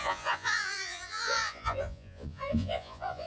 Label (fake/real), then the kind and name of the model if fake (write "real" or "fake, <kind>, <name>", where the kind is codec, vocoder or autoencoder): fake, vocoder, Vocos